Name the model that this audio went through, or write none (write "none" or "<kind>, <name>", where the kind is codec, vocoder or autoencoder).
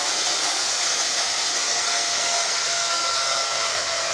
codec, SNAC